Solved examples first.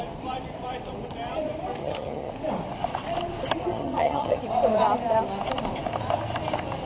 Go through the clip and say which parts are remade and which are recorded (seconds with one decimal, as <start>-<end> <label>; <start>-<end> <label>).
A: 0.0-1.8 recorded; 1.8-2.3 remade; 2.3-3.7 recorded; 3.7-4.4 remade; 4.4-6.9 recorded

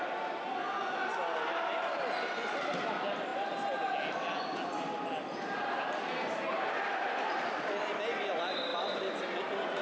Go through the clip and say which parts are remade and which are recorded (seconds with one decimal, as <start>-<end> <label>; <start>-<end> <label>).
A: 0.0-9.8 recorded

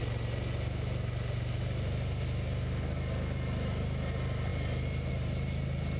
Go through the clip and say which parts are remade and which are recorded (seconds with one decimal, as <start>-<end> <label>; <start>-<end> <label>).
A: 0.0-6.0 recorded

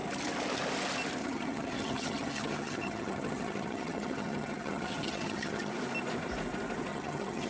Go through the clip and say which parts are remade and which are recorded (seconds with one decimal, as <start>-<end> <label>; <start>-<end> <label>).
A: 0.0-1.2 recorded; 1.2-5.7 remade; 5.7-6.9 recorded; 6.9-7.5 remade

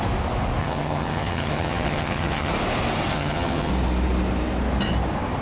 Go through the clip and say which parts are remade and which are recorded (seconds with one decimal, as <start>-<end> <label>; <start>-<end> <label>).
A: 0.0-0.6 recorded; 0.6-2.5 remade; 2.5-3.1 recorded; 3.1-3.7 remade; 3.7-5.4 recorded